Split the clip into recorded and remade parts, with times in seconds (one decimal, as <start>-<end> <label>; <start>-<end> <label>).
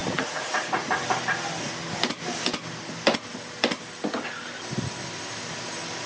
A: 0.0-0.9 remade; 0.9-6.1 recorded